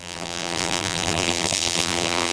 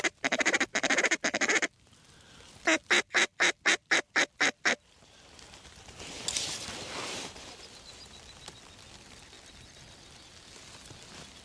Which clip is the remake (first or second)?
first